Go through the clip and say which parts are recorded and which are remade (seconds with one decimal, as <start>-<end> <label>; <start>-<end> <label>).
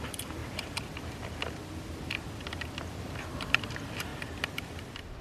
0.0-0.4 remade; 0.4-3.2 recorded; 3.2-4.1 remade; 4.1-5.2 recorded